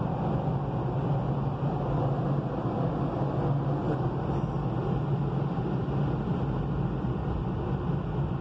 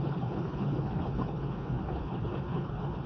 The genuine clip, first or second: first